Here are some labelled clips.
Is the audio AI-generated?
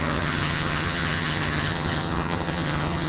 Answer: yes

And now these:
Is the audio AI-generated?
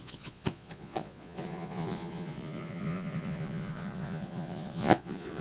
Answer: yes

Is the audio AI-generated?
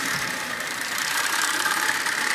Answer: yes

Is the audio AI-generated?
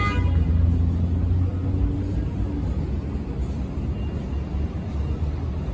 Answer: no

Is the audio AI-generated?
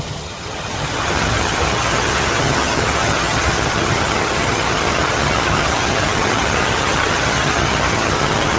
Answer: yes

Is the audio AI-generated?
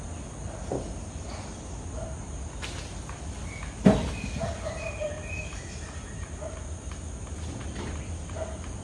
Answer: no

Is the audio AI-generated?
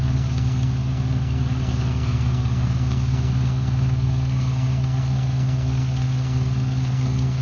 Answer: yes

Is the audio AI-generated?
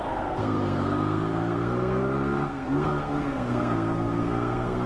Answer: yes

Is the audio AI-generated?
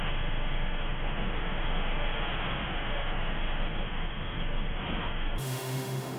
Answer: yes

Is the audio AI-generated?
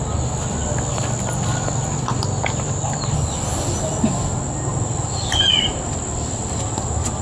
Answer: no